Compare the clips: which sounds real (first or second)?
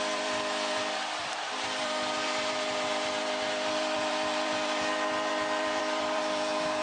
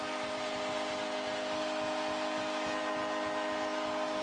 second